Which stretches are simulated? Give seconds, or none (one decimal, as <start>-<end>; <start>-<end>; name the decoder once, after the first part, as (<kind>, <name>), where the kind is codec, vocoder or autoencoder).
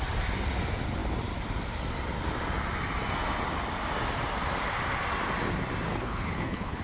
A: 5.9-6.8 (codec, HILCodec)